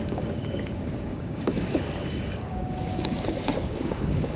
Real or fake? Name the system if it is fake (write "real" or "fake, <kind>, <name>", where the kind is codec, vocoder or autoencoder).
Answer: fake, codec, DAC